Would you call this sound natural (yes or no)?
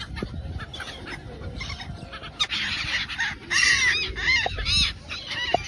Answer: yes